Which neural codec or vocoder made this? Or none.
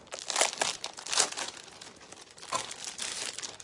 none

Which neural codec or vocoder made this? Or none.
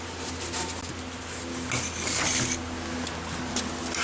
none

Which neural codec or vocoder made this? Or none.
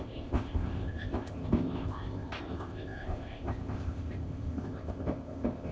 codec, ZipCodec